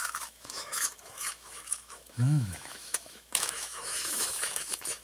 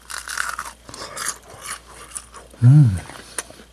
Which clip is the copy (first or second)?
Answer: first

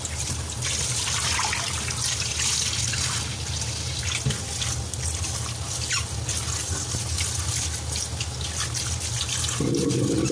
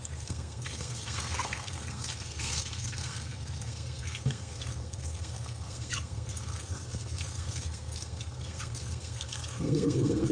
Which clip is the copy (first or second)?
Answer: second